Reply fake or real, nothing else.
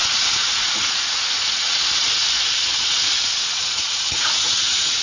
fake